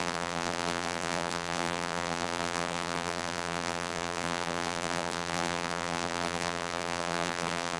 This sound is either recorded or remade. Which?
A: remade